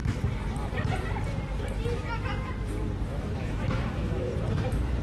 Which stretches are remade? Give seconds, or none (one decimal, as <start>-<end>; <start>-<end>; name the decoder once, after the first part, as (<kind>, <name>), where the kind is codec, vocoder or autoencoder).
3.1-4.3 (autoencoder, DAC-VAE)